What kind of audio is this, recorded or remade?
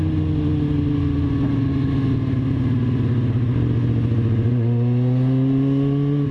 recorded